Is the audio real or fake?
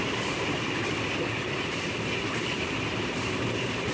real